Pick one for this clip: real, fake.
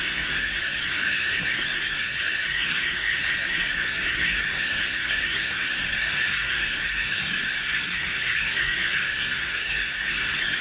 fake